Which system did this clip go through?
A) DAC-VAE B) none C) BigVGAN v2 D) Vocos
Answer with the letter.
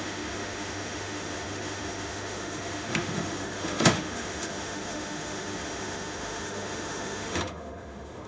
A